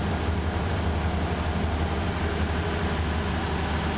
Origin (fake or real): real